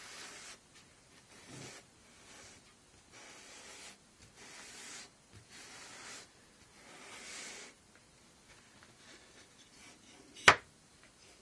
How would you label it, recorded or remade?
recorded